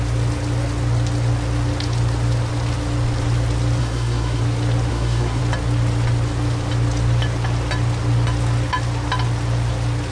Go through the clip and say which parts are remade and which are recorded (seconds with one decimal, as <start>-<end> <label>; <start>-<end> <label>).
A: 0.0-3.8 recorded; 3.8-4.4 remade; 4.4-4.9 recorded; 4.9-5.4 remade; 5.4-10.1 recorded